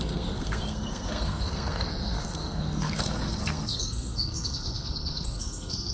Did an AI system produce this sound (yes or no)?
yes